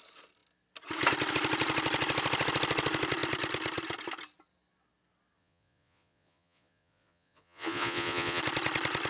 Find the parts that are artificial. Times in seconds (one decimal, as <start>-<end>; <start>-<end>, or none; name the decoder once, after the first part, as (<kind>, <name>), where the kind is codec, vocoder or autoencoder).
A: 5.4-8.4 (vocoder, Vocos)